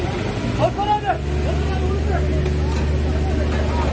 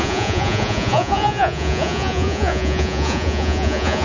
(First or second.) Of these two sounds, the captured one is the first